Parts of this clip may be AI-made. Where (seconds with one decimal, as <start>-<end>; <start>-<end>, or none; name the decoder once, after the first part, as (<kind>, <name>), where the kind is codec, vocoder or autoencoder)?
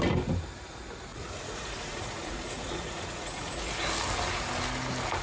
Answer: 1.1-3.7 (vocoder, Vocos)